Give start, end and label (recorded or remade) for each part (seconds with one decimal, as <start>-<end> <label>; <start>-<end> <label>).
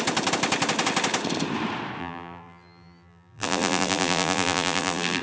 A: 0.0-2.0 recorded; 2.0-5.2 remade